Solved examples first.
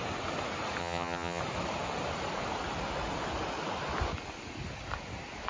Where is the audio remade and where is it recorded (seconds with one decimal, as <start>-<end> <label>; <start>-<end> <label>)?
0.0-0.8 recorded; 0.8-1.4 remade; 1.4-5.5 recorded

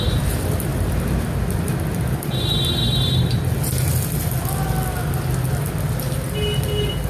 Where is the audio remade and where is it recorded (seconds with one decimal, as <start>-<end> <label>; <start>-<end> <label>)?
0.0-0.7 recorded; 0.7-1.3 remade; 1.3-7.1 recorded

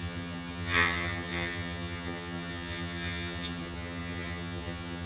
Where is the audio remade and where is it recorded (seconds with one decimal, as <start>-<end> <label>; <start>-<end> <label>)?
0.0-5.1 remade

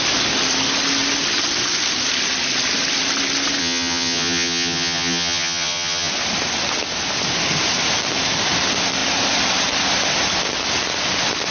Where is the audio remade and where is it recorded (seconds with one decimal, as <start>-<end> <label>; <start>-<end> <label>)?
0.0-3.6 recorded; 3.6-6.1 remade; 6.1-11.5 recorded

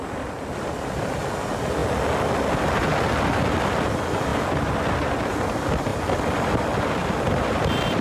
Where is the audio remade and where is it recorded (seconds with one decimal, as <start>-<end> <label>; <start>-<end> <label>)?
0.0-1.8 remade; 1.8-2.5 recorded; 2.5-5.9 remade; 5.9-6.5 recorded; 6.5-8.0 remade